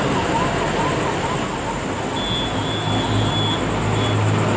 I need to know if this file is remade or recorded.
recorded